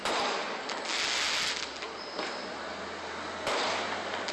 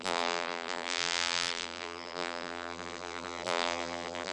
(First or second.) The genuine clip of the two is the first